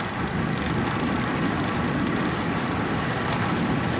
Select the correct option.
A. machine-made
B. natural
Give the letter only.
B